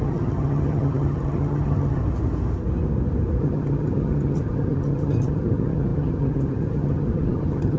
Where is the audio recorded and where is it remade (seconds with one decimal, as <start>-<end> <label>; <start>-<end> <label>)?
0.0-2.0 remade; 2.0-3.4 recorded; 3.4-7.8 remade